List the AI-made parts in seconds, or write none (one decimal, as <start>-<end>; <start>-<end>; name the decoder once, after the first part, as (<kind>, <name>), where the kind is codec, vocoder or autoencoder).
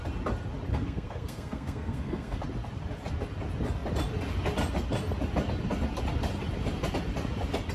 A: 0.7-2.4 (codec, SNAC)